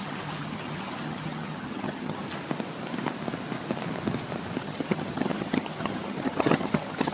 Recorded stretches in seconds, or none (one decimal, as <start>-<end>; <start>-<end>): 2.2-4.6